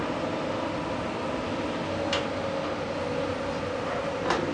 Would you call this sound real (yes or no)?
yes